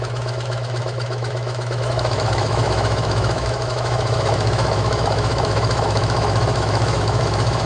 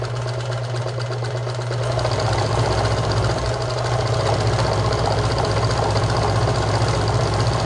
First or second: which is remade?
first